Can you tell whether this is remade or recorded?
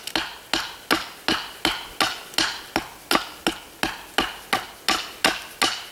recorded